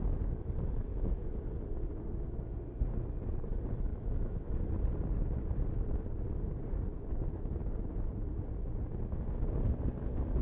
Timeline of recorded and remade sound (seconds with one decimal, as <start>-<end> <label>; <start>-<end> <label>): 0.0-0.9 recorded; 0.9-1.4 remade; 1.4-3.9 recorded; 3.9-4.5 remade; 4.5-10.4 recorded